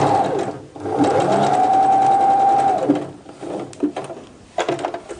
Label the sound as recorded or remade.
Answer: recorded